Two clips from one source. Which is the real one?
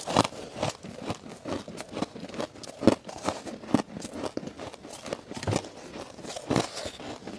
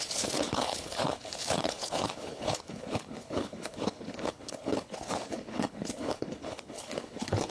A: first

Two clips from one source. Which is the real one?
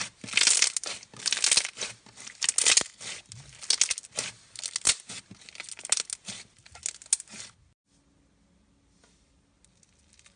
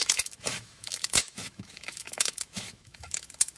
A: first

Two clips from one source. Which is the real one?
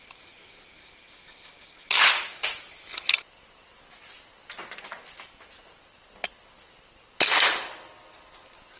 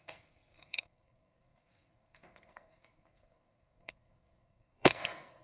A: first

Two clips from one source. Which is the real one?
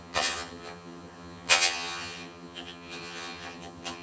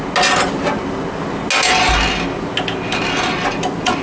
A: second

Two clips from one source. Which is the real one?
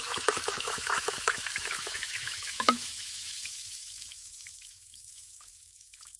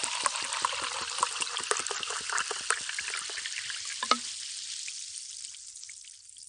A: second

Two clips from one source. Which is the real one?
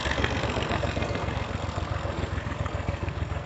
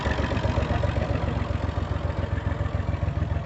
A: second